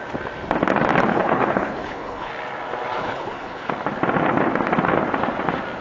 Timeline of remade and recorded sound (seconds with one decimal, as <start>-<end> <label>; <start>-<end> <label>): 0.0-1.1 recorded; 1.1-2.3 remade; 2.3-3.0 recorded; 3.0-3.7 remade; 3.7-5.8 recorded